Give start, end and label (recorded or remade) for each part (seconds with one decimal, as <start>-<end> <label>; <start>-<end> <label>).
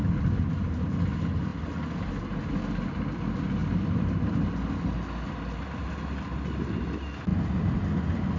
0.0-3.6 recorded; 3.6-4.7 remade; 4.7-7.3 recorded; 7.3-7.8 remade; 7.8-8.4 recorded